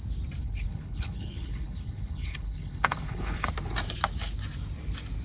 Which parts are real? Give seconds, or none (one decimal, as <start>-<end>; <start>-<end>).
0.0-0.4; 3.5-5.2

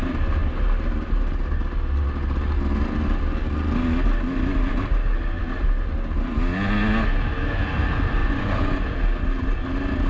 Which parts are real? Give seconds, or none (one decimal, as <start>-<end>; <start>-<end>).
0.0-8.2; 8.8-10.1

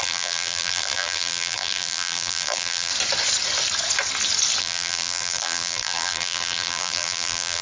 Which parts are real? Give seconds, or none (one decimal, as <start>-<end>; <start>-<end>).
2.9-4.6

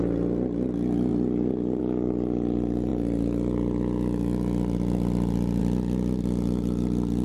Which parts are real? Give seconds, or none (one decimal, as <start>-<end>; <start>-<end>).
0.0-1.1; 1.8-7.2

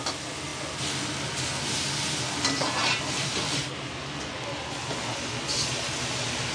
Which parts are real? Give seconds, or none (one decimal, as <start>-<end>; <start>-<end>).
0.0-2.8; 3.6-6.5